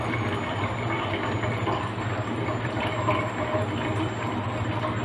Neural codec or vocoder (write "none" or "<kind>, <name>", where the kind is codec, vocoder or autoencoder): none